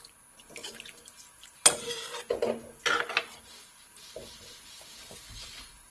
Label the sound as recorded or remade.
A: recorded